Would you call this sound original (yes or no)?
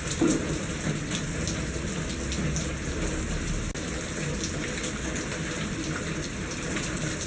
yes